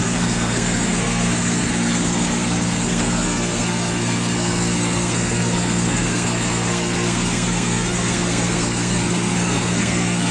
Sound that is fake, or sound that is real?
fake